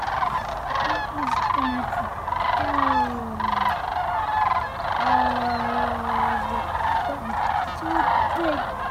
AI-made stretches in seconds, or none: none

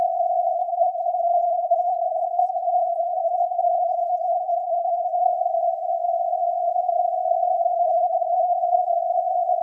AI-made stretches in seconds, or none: 0.6-5.3 (codec, HILCodec); 7.7-8.6

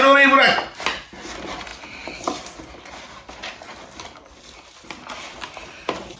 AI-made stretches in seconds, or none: none

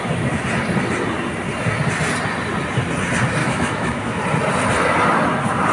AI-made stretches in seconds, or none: 3.4-4.2 (autoencoder, DAC-VAE)